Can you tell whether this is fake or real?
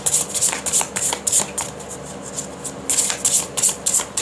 real